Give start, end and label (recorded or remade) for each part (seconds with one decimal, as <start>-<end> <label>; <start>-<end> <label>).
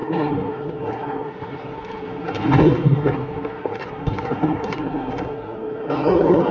0.0-6.5 remade